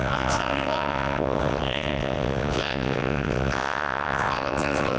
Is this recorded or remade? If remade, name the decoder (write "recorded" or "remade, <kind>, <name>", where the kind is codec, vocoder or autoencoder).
remade, vocoder, WaveNeXt